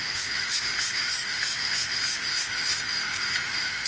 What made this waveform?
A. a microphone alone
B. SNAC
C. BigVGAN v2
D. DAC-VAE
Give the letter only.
D